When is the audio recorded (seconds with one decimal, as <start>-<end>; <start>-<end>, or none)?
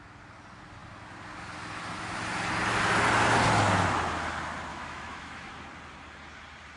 0.0-4.7; 5.5-6.8